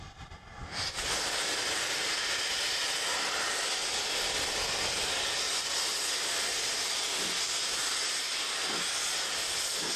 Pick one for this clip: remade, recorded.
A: recorded